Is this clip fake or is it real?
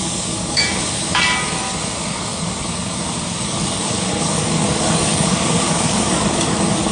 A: fake